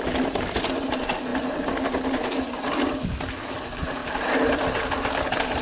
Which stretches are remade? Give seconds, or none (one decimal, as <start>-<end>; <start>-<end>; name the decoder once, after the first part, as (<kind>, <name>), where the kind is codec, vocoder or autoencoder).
none